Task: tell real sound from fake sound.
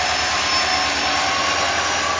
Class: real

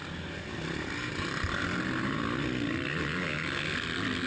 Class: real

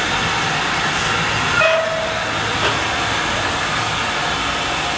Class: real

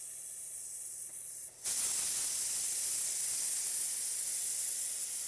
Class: real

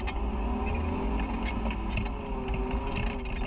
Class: real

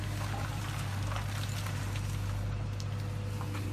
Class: real